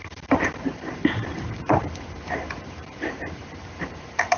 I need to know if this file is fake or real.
fake